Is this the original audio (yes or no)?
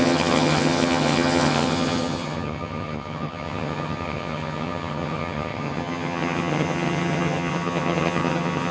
no